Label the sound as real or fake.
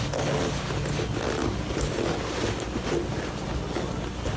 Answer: real